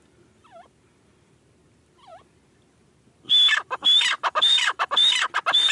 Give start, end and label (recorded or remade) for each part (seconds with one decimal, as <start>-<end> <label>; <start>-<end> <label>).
0.0-4.2 recorded; 4.2-4.9 remade; 4.9-5.7 recorded